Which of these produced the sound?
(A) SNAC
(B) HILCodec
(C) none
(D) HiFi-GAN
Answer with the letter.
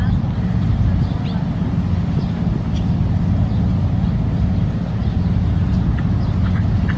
C